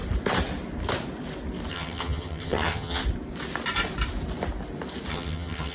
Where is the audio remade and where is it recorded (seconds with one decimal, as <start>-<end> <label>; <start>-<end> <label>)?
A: 0.0-1.7 recorded; 1.7-3.0 remade; 3.0-5.1 recorded; 5.1-5.7 remade